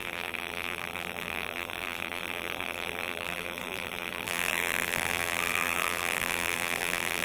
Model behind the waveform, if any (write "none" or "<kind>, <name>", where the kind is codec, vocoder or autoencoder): vocoder, BigVGAN v2